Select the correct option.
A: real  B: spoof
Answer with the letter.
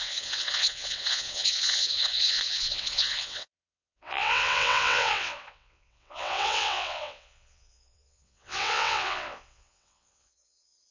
B